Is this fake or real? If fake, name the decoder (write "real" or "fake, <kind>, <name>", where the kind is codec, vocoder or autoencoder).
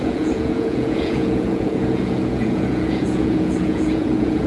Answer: fake, vocoder, Vocos